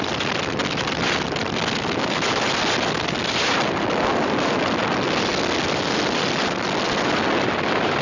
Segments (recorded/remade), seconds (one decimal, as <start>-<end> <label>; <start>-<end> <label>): 0.0-8.0 recorded